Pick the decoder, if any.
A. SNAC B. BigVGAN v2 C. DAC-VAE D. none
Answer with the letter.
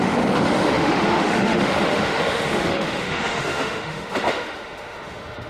C